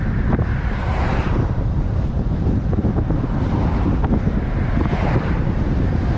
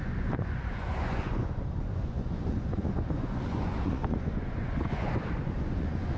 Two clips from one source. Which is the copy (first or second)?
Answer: second